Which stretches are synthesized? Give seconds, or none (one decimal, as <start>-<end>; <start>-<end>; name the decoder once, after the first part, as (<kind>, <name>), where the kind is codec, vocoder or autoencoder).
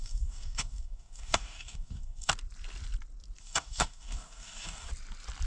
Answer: 0.0-2.3 (codec, DAC); 3.4-4.9